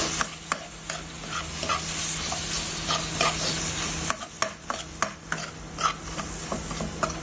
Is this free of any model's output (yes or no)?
yes